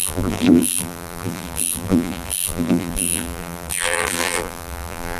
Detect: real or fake fake